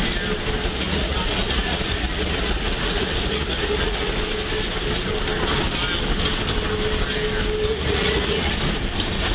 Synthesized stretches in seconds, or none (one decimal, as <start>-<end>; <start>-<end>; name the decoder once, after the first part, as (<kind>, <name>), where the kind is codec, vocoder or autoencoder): 0.6-4.1 (vocoder, Vocos); 7.7-8.5